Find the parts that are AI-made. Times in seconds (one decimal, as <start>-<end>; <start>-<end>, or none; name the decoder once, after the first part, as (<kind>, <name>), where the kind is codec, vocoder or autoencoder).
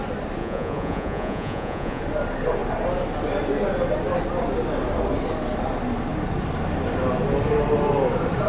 0.4-2.0 (vocoder, Vocos)